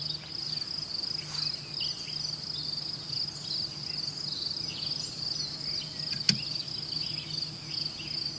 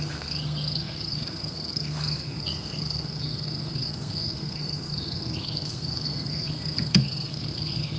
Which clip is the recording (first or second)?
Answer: first